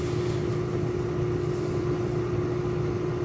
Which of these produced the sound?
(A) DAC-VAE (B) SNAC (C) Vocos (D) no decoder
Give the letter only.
D